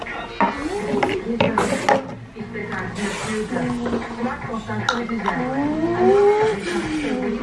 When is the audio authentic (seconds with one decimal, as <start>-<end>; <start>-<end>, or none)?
0.0-6.5